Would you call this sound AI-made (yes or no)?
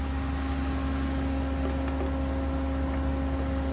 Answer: no